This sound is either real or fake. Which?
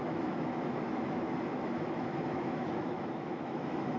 fake